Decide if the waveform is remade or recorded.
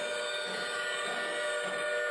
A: recorded